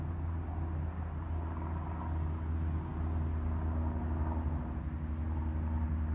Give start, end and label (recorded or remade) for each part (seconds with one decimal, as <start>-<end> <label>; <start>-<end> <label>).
0.0-6.1 recorded